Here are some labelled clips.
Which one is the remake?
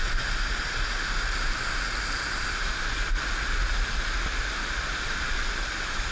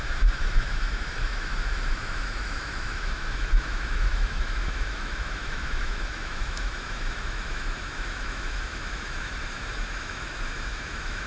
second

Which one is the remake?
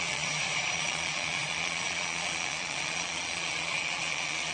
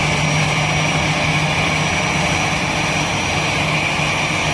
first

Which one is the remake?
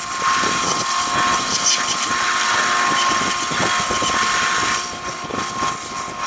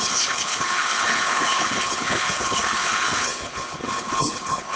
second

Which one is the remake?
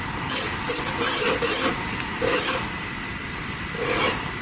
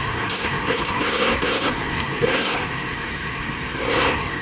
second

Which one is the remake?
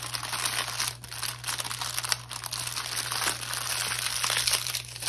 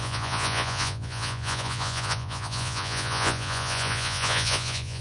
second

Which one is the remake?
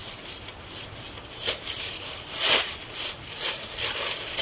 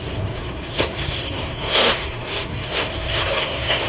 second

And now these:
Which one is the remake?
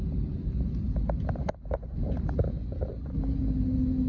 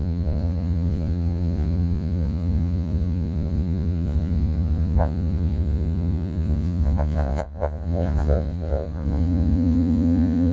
second